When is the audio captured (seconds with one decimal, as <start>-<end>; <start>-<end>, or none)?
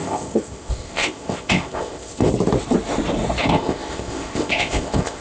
2.3-3.4